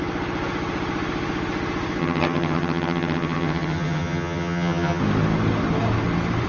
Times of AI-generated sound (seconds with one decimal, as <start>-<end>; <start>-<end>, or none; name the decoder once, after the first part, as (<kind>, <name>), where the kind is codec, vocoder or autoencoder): 2.0-5.0 (vocoder, HiFi-GAN)